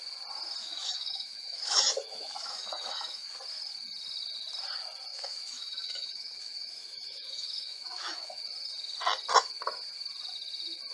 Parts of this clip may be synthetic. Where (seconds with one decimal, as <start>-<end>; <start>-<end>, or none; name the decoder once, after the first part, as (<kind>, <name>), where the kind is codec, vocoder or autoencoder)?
0.6-3.3 (autoencoder, DAC-VAE); 5.1-8.4